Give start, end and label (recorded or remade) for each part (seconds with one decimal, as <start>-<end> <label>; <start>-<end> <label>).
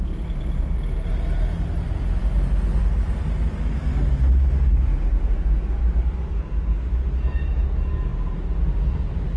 0.0-9.4 recorded